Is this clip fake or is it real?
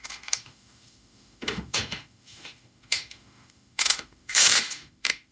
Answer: fake